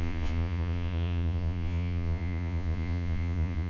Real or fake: fake